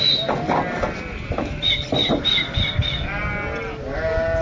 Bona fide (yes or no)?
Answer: yes